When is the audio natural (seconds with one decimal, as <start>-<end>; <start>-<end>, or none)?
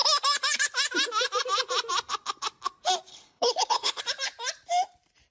0.0-3.1; 4.0-5.3